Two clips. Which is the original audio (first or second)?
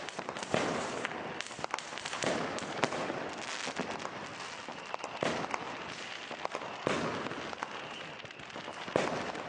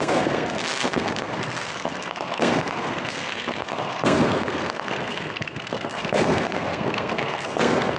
first